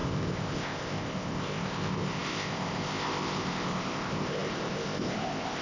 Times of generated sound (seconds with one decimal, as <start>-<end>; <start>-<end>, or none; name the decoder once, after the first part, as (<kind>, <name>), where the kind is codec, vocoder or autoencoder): 0.0-5.6 (codec, ZipCodec)